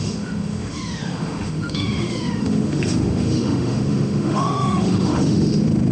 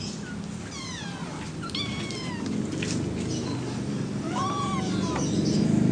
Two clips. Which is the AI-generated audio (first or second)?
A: first